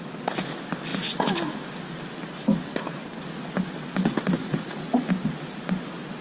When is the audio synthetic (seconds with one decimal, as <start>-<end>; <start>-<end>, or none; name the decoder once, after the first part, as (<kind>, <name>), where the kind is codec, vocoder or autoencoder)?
4.4-5.1 (vocoder, Vocos)